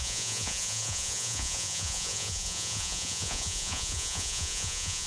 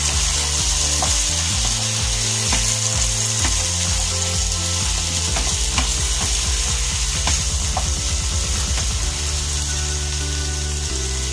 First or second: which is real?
second